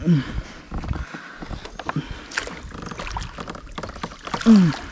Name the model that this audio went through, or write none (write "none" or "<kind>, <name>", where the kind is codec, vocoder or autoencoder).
none